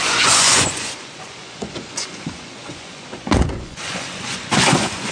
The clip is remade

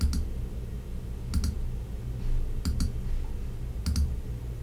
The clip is recorded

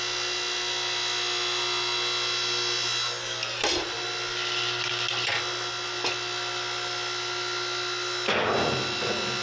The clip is recorded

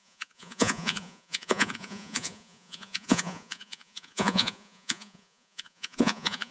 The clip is remade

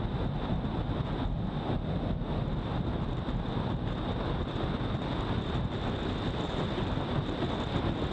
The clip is recorded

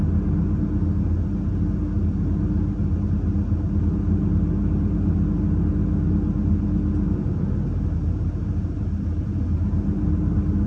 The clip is recorded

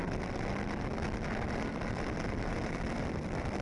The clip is recorded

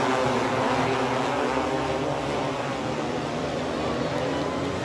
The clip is recorded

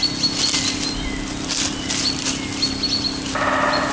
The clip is recorded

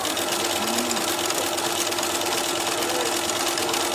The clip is recorded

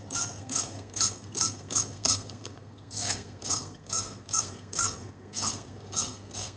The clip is remade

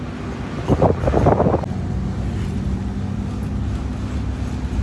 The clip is recorded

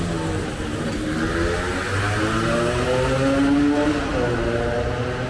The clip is recorded